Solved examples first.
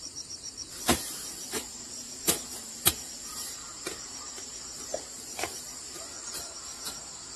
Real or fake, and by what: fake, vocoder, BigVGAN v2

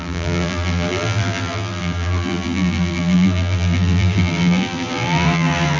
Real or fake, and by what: fake, vocoder, BigVGAN v2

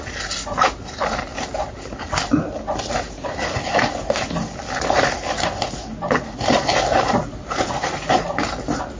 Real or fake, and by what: real